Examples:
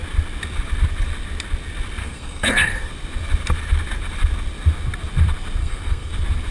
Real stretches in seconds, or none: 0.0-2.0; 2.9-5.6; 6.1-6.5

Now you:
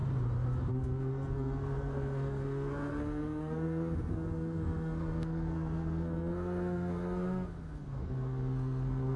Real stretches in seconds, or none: 0.0-0.7

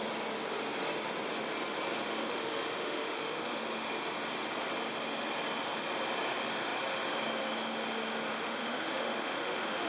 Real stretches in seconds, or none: 0.0-2.3; 3.6-8.3